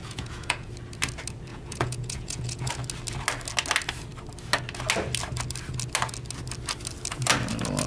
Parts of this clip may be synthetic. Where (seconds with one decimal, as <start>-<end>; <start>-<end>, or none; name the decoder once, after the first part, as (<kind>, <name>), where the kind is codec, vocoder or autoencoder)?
0.0-0.7 (vocoder, Vocos); 1.5-2.7